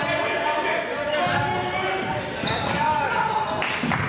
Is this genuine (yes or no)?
yes